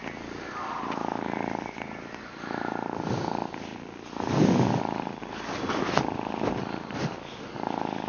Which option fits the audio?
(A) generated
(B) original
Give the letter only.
B